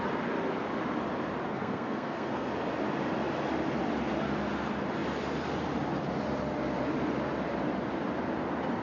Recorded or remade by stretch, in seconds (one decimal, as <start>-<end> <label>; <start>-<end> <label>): 0.0-1.5 recorded; 1.5-2.5 remade; 2.5-8.8 recorded